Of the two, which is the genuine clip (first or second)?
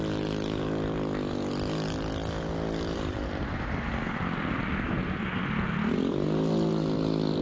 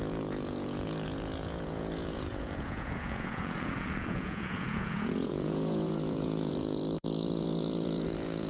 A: first